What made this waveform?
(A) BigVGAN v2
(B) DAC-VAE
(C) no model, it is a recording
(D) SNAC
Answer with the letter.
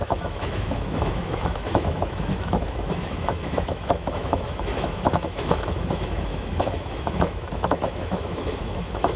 B